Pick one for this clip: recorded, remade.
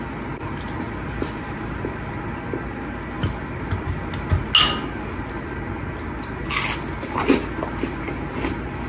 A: recorded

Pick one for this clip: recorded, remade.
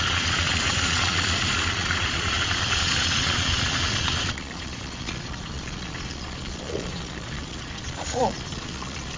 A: remade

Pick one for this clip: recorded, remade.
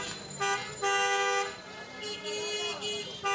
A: recorded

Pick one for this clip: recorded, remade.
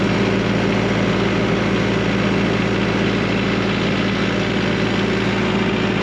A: recorded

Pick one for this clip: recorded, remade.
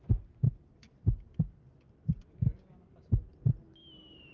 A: recorded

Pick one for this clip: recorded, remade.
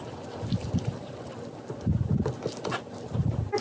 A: recorded